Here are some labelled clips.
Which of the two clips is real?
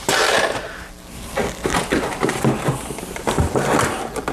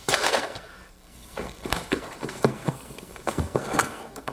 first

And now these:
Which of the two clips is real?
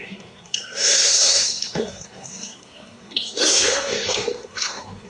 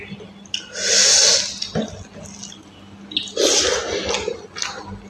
second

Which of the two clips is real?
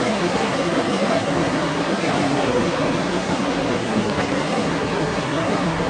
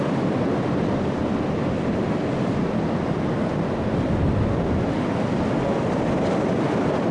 second